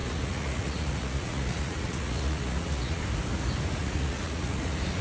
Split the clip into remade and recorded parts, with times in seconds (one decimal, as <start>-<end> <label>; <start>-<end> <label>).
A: 0.0-3.0 remade; 3.0-3.8 recorded; 3.8-5.0 remade